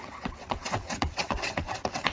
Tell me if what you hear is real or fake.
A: fake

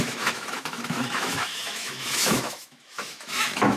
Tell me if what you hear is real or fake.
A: fake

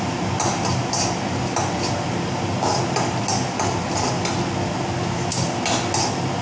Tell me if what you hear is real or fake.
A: real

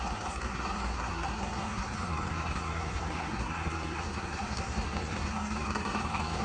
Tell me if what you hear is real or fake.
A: fake